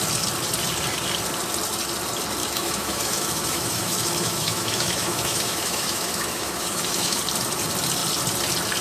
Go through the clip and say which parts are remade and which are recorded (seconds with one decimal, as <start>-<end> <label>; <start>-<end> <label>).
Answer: 0.0-2.4 recorded; 2.4-7.2 remade; 7.2-8.8 recorded